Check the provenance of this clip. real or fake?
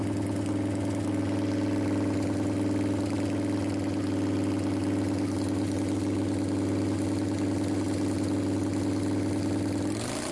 real